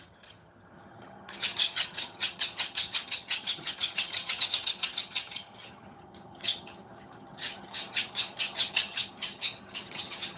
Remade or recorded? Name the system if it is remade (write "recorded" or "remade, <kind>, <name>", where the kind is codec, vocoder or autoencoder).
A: remade, vocoder, HiFi-GAN